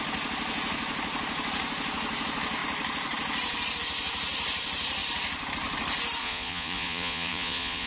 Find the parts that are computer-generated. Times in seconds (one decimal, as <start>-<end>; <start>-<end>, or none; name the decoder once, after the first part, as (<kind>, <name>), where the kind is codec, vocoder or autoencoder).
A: 6.2-7.9 (vocoder, Vocos)